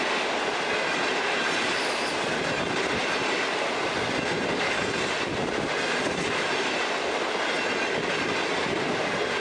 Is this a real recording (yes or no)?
yes